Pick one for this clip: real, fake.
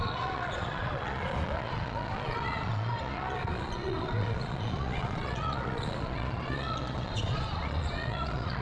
fake